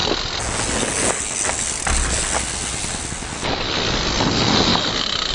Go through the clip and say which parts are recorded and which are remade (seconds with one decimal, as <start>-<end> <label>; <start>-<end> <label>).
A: 0.0-5.3 recorded